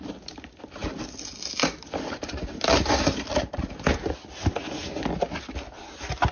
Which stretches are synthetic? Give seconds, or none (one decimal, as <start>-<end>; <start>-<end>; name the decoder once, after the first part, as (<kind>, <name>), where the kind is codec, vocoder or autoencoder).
none